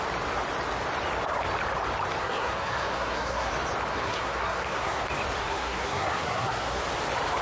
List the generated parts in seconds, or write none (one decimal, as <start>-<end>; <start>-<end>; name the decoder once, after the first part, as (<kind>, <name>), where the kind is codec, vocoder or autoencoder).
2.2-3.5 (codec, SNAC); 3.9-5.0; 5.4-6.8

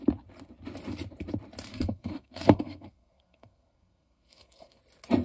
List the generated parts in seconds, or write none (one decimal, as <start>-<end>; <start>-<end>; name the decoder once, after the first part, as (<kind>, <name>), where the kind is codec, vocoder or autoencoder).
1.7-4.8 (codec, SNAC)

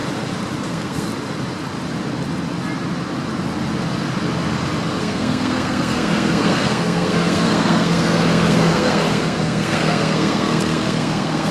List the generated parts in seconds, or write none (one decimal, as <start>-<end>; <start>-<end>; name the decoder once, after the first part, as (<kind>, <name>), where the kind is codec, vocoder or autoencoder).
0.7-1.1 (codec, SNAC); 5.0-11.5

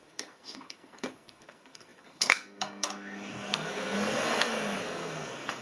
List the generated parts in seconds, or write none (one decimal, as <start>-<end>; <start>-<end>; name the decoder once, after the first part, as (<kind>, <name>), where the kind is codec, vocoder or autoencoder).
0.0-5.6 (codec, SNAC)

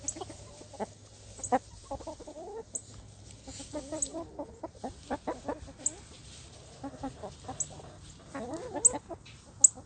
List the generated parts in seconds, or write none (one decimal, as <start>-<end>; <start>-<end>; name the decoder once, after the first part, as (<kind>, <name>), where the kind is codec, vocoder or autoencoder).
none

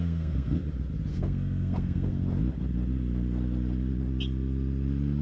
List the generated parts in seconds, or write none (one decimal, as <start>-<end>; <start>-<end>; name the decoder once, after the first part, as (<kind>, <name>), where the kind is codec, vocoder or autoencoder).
0.0-0.6 (codec, SNAC); 1.1-2.2

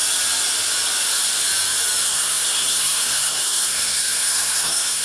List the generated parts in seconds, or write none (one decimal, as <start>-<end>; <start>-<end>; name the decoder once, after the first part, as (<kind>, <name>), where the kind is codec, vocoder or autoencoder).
2.0-5.0 (codec, SNAC)